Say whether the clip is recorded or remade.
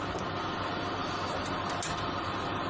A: recorded